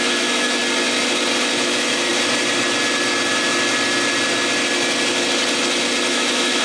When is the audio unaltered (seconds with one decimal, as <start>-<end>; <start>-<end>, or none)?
0.6-1.6; 2.1-6.1